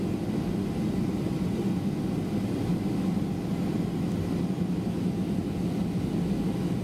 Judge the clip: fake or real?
real